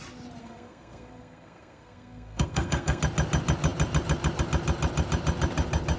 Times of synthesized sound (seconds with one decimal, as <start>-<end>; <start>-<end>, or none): 0.4-3.0